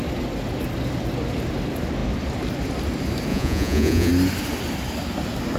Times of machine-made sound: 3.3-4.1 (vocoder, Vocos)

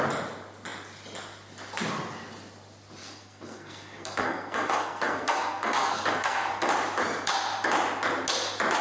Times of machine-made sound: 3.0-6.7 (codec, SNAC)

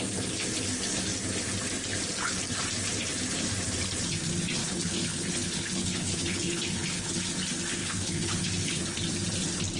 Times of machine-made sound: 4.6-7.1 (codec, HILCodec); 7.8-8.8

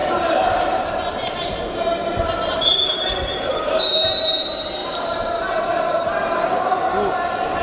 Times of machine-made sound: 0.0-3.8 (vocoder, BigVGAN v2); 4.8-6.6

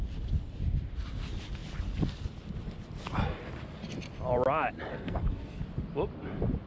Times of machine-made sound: 4.9-5.6 (codec, SNAC)